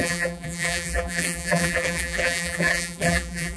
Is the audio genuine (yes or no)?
no